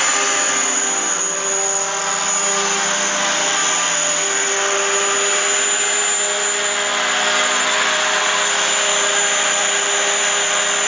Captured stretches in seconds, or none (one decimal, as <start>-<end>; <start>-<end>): 0.0-10.9

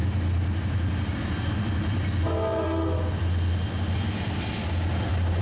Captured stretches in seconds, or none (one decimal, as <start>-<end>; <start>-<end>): 0.0-5.4

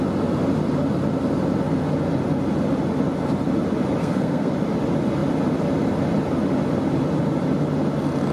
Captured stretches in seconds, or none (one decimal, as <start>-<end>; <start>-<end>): 0.0-4.0; 4.5-8.3

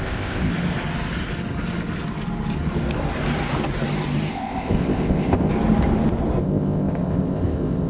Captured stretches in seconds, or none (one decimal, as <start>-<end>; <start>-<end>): 0.5-4.3; 5.5-6.4

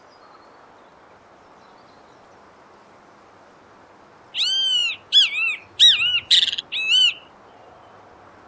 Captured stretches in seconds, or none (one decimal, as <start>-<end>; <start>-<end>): 0.0-8.5

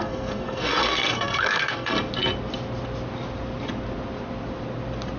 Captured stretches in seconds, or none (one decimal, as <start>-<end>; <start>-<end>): 1.9-5.2